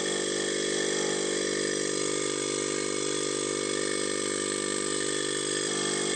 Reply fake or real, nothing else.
fake